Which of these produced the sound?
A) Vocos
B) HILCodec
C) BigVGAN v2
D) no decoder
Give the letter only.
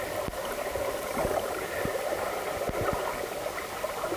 D